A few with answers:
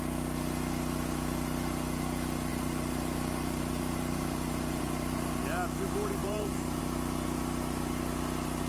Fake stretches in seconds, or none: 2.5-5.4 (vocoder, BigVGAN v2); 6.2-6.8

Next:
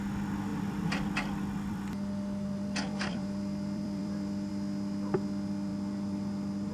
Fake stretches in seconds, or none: 0.5-4.5 (vocoder, BigVGAN v2); 5.7-6.7

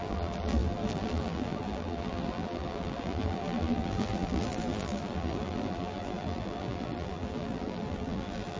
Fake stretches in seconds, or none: 0.0-8.6 (vocoder, BigVGAN v2)

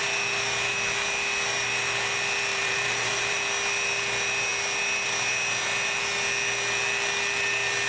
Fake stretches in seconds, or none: 2.5-3.4 (vocoder, BigVGAN v2)

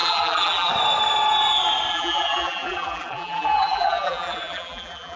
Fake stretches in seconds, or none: 0.0-0.7 (vocoder, BigVGAN v2); 1.9-5.2

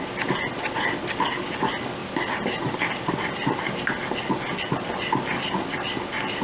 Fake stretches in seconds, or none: 2.0-3.9 (vocoder, BigVGAN v2)